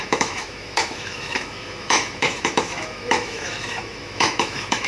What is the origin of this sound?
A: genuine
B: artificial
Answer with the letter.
B